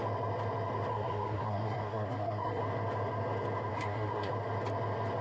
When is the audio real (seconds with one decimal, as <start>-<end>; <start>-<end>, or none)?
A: 0.0-0.9; 2.6-3.7; 4.3-5.2